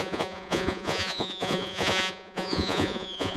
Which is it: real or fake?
fake